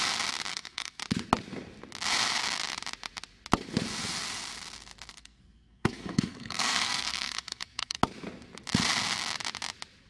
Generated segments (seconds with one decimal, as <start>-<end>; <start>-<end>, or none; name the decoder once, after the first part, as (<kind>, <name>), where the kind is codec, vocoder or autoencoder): 0.5-1.0 (codec, SNAC); 5.1-8.0